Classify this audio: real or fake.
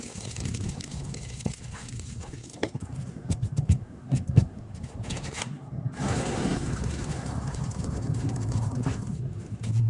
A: fake